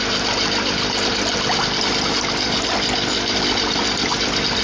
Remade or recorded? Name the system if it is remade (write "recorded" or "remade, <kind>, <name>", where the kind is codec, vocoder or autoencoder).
recorded